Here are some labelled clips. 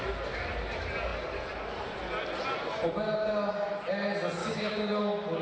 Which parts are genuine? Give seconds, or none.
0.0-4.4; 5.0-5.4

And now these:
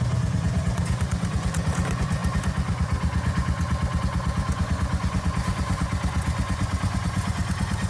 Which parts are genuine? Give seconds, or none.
none

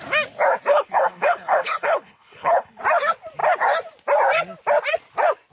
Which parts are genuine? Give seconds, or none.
0.0-0.7; 2.8-5.5

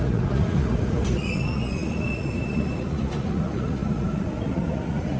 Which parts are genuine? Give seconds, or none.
none

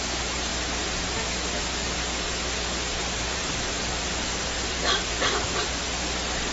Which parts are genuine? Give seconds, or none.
0.0-3.0; 5.8-6.5